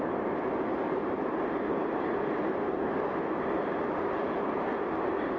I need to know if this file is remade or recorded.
recorded